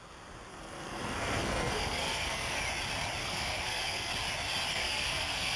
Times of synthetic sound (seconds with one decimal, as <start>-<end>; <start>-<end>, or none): 0.5-2.6; 3.2-4.1; 4.7-5.6